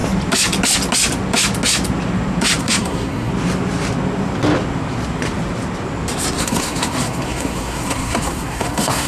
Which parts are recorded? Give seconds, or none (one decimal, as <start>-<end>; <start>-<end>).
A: 0.0-2.6; 3.3-6.4

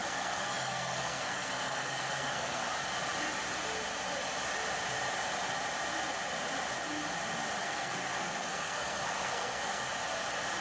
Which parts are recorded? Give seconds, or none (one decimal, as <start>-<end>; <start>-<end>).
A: 2.6-7.6; 9.9-10.6

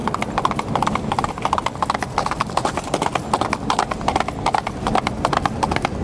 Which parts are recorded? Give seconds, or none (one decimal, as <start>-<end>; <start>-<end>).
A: 0.0-6.0

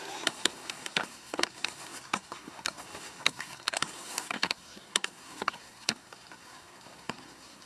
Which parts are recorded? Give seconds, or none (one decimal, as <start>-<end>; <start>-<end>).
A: none

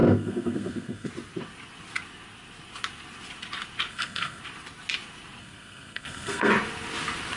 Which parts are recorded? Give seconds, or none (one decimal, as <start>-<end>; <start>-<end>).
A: 1.1-3.9; 4.4-5.4; 6.5-7.4